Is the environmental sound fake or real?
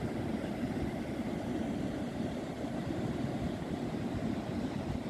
real